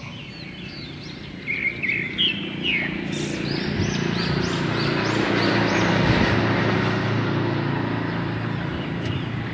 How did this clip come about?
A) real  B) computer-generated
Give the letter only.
A